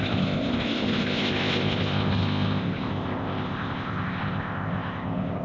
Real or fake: fake